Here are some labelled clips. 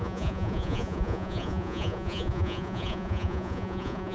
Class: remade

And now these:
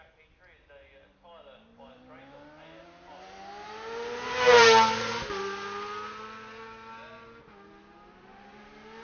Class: recorded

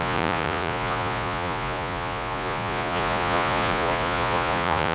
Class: remade